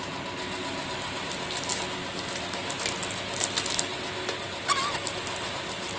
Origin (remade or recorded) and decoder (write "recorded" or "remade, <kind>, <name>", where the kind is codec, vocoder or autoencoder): recorded